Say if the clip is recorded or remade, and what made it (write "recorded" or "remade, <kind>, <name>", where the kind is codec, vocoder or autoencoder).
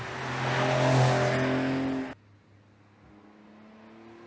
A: recorded